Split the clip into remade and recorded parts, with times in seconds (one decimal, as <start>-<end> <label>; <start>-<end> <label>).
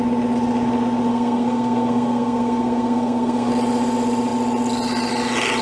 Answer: 0.0-1.1 recorded; 1.1-3.5 remade; 3.5-5.6 recorded